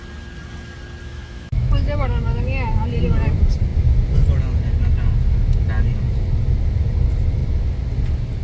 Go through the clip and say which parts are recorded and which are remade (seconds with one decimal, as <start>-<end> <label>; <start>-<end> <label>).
0.0-1.1 recorded; 1.1-2.4 remade; 2.4-8.4 recorded